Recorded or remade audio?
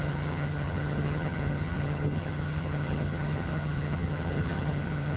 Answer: remade